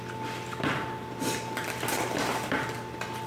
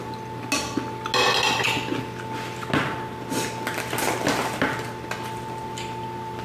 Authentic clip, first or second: second